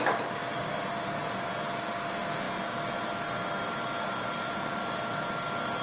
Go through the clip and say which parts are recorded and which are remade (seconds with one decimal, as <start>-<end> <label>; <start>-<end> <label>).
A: 0.0-5.8 recorded

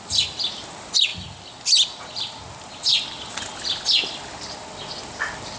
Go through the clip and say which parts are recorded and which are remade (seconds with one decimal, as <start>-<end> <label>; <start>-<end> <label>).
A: 0.0-5.6 recorded

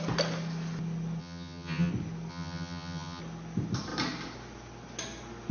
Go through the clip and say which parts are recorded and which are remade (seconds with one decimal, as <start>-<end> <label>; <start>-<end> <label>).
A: 0.0-1.2 recorded; 1.2-1.9 remade; 1.9-2.3 recorded; 2.3-3.2 remade; 3.2-5.5 recorded

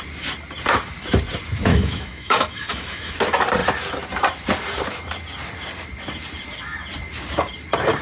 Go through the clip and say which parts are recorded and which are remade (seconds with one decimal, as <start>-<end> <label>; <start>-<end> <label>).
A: 0.0-1.7 recorded; 1.7-3.1 remade; 3.1-8.0 recorded

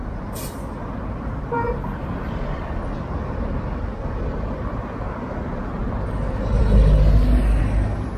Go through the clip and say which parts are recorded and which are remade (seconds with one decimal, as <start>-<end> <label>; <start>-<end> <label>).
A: 0.0-8.2 recorded

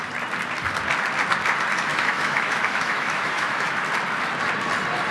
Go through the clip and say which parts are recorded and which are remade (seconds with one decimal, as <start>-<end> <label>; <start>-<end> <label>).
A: 0.0-1.9 recorded; 1.9-3.8 remade; 3.8-5.1 recorded

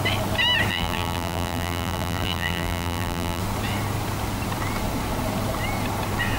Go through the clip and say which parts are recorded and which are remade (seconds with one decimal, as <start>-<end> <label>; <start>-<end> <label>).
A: 0.0-0.7 recorded; 0.7-3.4 remade; 3.4-6.4 recorded

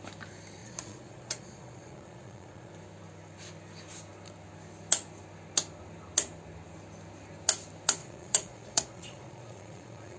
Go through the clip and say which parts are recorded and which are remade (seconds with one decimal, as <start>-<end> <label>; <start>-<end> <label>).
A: 0.0-0.6 recorded; 0.6-2.7 remade; 2.7-8.0 recorded; 8.0-10.2 remade